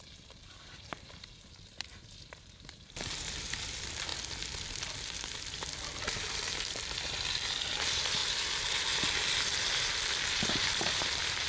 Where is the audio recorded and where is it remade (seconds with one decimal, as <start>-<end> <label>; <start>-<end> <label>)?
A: 0.0-4.1 remade; 4.1-7.7 recorded; 7.7-8.2 remade; 8.2-10.3 recorded; 10.3-11.5 remade